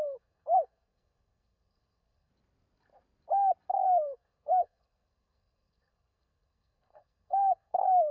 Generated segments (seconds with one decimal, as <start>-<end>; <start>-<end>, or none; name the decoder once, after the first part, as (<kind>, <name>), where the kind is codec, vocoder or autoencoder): 0.0-2.3 (codec, SNAC); 3.7-8.1